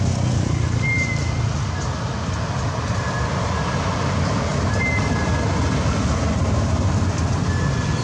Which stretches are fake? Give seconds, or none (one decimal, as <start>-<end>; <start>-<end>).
none